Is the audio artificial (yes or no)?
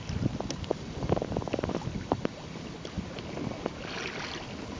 no